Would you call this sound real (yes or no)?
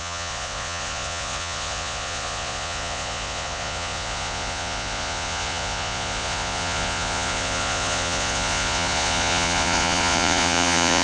no